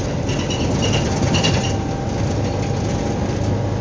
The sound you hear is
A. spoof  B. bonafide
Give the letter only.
B